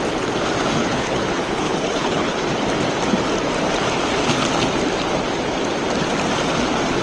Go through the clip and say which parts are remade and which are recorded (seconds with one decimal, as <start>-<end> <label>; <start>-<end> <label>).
0.0-0.8 recorded; 0.8-2.4 remade; 2.4-7.0 recorded